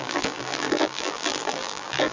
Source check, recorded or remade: remade